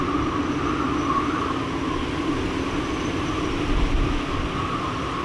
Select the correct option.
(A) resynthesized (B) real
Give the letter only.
B